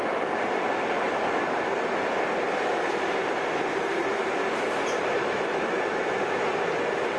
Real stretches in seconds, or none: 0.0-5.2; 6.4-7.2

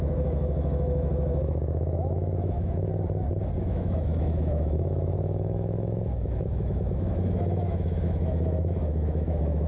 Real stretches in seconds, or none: 2.9-3.6

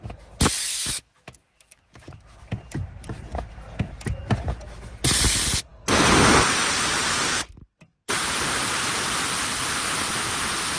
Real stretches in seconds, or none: 0.0-0.6; 2.2-10.8